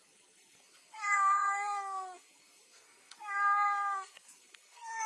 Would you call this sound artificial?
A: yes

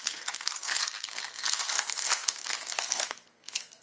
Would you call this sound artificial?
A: yes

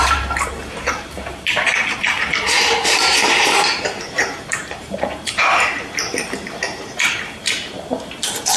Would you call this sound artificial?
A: yes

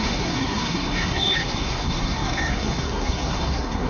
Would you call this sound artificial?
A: yes